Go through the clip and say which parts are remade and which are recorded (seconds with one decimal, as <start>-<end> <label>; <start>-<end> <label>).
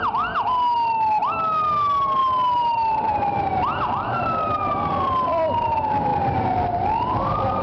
0.0-7.6 recorded